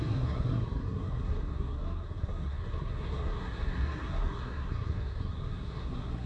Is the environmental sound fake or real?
fake